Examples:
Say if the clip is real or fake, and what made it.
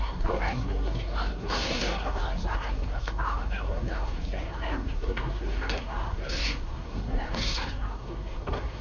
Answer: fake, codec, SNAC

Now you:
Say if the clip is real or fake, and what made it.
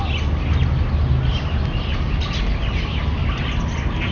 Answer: real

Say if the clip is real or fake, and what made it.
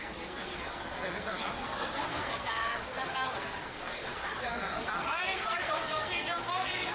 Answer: fake, codec, SNAC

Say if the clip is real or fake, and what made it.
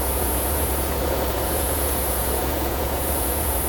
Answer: fake, vocoder, Vocos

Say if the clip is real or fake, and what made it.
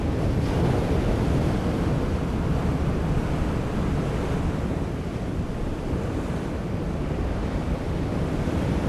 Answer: real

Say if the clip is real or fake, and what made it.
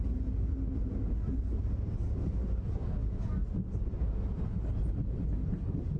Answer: real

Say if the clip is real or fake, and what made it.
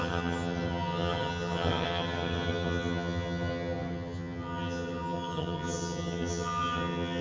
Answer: fake, vocoder, HiFi-GAN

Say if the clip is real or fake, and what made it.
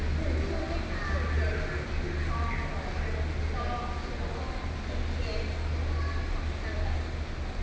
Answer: real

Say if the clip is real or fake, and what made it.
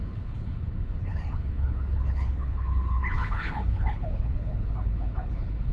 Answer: fake, codec, HILCodec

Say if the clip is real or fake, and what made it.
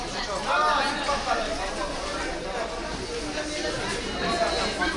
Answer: real